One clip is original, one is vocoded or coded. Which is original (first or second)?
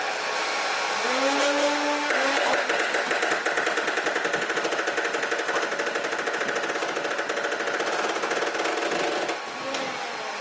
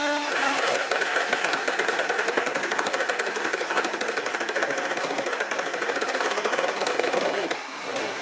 first